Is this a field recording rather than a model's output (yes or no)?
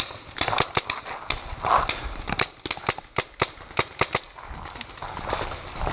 yes